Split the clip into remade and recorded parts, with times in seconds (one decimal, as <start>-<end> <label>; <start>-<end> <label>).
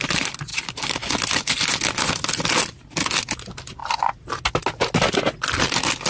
0.0-3.8 recorded; 3.8-4.4 remade; 4.4-6.1 recorded